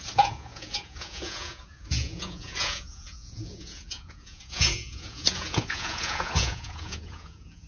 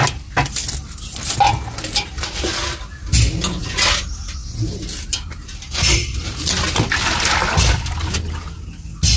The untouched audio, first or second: second